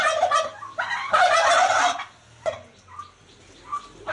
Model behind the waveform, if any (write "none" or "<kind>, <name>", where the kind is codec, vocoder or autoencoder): none